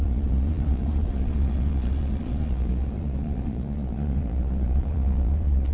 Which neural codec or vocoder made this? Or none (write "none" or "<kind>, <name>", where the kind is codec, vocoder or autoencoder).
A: vocoder, Vocos